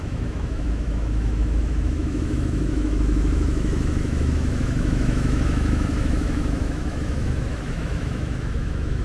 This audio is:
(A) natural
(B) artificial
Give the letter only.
B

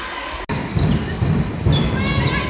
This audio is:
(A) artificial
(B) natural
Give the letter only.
B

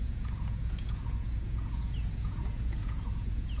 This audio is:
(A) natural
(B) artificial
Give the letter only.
B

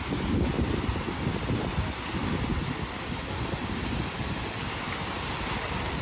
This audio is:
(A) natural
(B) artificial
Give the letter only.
A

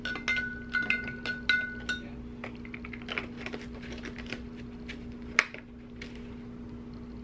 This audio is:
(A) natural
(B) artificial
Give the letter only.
A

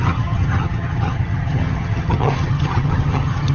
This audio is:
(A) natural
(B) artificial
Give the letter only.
B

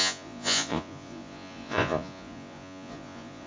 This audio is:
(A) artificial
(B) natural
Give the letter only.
A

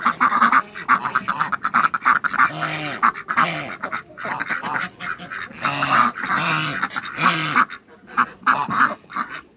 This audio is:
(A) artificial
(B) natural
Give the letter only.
B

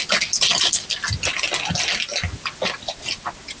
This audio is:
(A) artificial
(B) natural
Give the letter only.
B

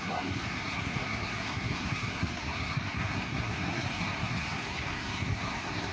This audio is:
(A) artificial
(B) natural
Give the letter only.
A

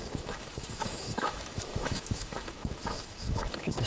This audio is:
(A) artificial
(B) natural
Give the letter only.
A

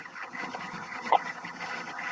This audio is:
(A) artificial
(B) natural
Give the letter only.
A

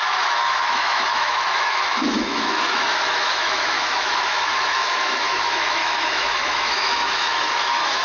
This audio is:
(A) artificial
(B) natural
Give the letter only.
A